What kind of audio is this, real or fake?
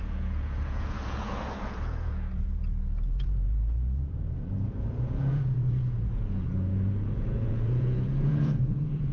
fake